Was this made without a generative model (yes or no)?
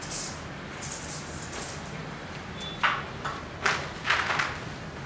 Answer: yes